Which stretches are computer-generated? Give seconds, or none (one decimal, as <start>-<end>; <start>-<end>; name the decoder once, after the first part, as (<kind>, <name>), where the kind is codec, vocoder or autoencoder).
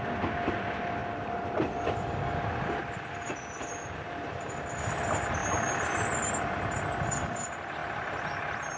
none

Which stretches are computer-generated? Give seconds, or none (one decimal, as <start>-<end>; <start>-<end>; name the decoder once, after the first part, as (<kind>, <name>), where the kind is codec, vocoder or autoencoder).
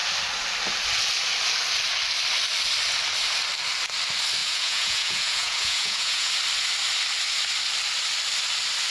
4.4-6.3 (vocoder, Vocos)